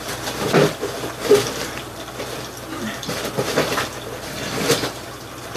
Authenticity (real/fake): fake